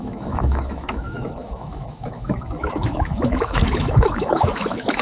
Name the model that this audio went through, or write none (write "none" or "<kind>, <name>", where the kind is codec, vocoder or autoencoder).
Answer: autoencoder, DAC-VAE